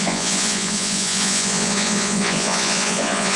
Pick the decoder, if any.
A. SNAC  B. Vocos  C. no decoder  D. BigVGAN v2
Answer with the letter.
B